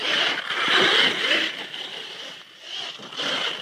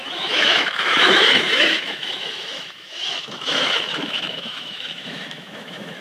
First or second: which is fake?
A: second